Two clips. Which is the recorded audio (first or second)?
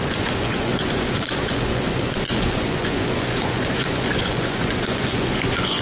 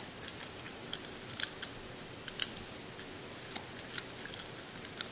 second